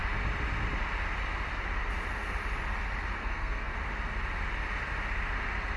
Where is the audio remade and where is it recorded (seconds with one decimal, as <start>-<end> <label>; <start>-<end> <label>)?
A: 0.0-3.2 recorded; 3.2-3.7 remade; 3.7-5.8 recorded